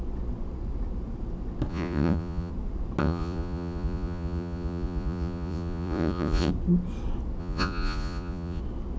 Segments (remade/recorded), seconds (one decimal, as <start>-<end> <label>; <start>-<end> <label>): 0.0-1.7 recorded; 1.7-2.5 remade; 2.5-3.0 recorded; 3.0-6.5 remade; 6.5-7.4 recorded; 7.4-8.6 remade; 8.6-9.0 recorded